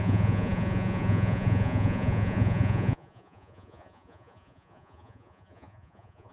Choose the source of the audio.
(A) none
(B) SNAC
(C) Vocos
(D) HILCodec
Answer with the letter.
C